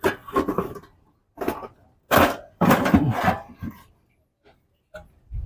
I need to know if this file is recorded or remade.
recorded